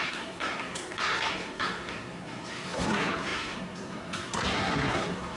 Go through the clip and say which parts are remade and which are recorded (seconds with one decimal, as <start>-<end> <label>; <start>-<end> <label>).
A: 0.0-5.4 remade